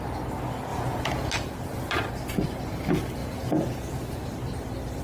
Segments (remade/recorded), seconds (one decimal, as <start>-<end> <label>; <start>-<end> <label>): 0.0-0.7 recorded; 0.7-1.3 remade; 1.3-3.2 recorded; 3.2-4.0 remade; 4.0-5.0 recorded